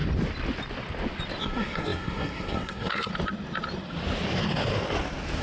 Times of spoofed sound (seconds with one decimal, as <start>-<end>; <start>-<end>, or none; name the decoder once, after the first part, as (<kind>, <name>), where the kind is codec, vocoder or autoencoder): 1.4-3.1 (codec, SNAC)